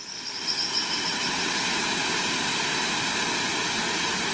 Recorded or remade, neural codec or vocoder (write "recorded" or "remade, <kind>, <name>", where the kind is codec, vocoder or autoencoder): recorded